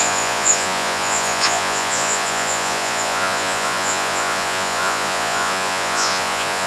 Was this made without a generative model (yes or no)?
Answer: no